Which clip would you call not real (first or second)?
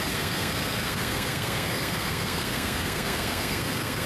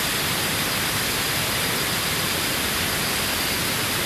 first